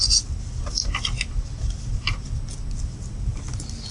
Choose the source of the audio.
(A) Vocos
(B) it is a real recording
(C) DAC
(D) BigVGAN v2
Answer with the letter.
B